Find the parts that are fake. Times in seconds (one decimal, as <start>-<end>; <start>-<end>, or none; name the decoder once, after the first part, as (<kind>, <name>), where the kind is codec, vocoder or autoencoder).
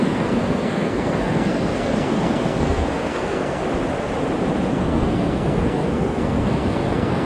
0.0-3.6 (codec, SNAC); 4.7-7.3